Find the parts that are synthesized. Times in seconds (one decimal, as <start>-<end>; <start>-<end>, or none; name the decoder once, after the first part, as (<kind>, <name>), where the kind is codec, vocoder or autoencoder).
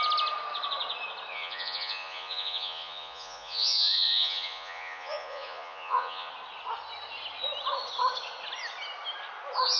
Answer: 1.3-6.3 (vocoder, Vocos)